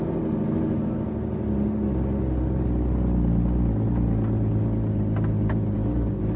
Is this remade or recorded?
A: recorded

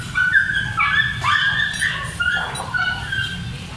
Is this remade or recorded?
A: recorded